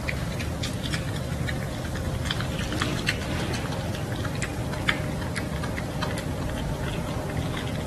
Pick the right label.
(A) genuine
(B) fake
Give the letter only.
A